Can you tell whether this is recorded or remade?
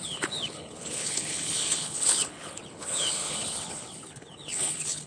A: remade